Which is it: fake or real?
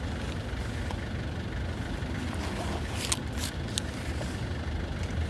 real